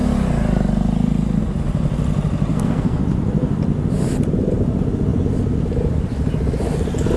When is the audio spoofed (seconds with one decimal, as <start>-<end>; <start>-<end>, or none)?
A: 2.5-3.0